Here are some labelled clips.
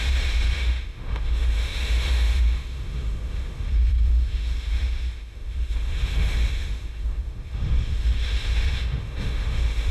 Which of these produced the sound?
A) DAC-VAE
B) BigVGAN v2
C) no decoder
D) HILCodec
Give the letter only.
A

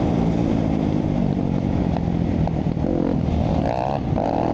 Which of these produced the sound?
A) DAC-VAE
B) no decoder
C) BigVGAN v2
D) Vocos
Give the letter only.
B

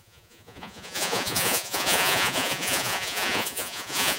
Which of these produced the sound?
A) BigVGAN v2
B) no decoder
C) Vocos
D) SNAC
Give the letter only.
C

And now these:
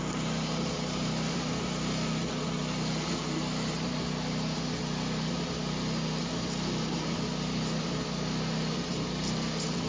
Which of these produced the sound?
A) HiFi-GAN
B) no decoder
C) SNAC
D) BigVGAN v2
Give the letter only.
B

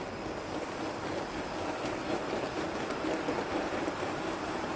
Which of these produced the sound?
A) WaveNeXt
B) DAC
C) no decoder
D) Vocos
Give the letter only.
C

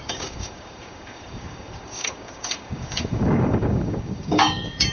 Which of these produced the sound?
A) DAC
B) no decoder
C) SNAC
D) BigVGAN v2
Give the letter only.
A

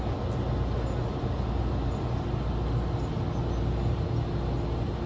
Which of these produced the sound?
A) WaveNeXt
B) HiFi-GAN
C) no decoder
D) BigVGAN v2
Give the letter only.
C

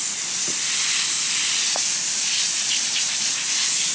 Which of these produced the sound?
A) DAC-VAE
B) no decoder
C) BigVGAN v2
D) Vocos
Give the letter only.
B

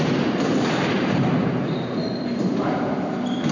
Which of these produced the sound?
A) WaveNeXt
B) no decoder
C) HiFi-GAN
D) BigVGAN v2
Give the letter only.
B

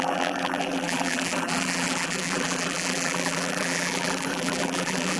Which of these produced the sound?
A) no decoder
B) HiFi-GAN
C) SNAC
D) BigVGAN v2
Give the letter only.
D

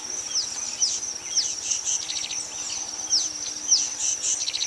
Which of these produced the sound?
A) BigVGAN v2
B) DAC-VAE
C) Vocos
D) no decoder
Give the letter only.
D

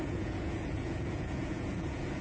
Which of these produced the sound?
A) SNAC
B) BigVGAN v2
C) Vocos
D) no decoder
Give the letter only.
C